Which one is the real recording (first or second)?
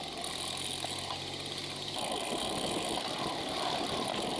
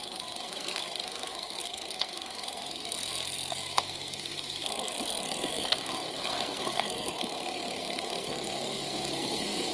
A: first